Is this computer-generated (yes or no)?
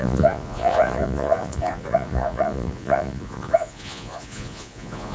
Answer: yes